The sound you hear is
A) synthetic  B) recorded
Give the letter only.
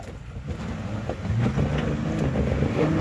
B